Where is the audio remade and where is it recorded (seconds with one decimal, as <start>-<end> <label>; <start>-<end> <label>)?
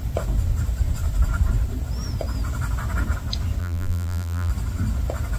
0.0-3.6 recorded; 3.6-4.5 remade; 4.5-5.4 recorded